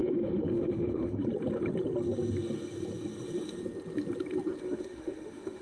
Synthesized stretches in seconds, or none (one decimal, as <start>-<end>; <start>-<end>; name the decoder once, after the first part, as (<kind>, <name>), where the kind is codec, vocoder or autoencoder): 0.0-1.2 (autoencoder, DAC-VAE); 4.6-5.6